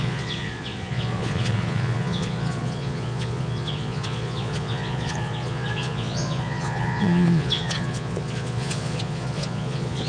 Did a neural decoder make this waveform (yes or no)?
yes